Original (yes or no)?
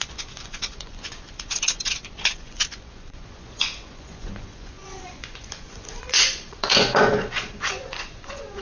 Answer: no